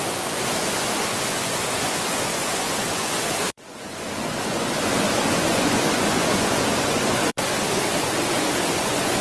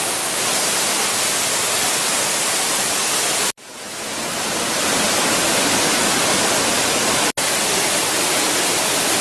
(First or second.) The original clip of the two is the second